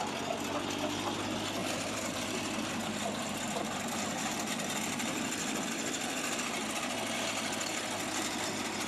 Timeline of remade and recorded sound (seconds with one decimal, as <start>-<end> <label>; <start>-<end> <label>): 0.0-1.6 recorded; 1.6-6.7 remade; 6.7-8.9 recorded